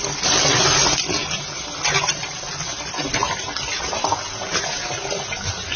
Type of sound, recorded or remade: recorded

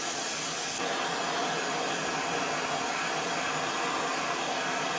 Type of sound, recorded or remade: recorded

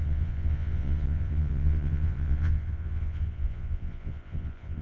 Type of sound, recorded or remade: remade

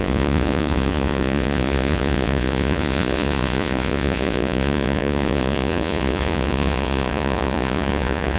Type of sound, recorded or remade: remade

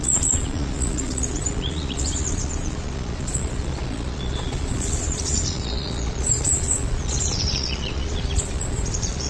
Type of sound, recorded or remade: remade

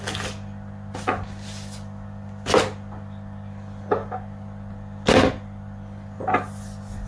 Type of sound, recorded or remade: recorded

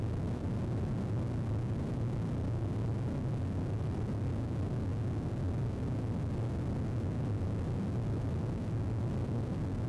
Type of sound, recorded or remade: recorded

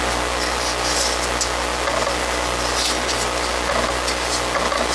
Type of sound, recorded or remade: recorded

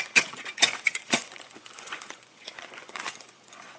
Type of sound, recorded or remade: remade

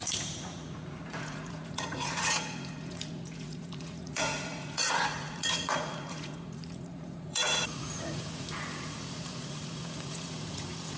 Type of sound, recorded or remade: remade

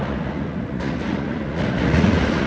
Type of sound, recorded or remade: remade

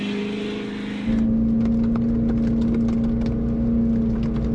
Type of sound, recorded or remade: recorded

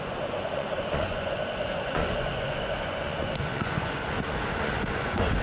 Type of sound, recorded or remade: remade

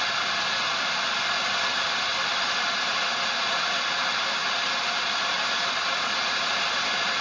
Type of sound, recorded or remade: recorded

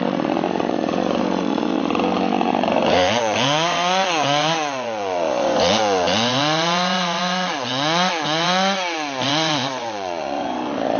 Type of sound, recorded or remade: remade